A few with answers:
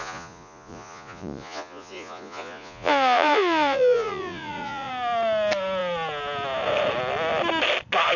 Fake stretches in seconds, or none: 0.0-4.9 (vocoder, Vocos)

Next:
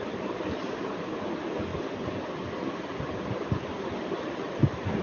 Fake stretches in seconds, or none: none

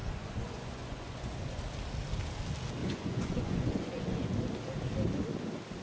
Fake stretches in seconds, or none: 0.0-1.6 (vocoder, Vocos); 2.8-4.3